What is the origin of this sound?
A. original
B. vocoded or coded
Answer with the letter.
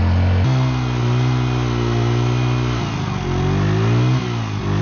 A